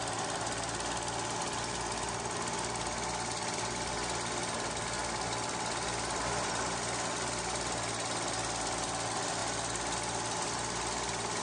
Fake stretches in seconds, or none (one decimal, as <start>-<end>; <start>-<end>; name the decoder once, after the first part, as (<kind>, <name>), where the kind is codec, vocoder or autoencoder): none